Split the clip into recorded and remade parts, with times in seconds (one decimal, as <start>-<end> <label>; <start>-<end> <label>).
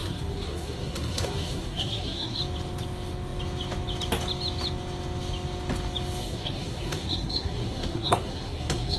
0.0-2.4 remade; 2.4-6.2 recorded; 6.2-9.0 remade